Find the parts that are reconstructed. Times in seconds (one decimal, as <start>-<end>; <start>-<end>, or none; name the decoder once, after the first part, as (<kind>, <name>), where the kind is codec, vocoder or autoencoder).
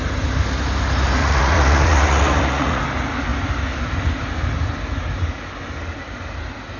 1.2-2.8 (vocoder, Vocos)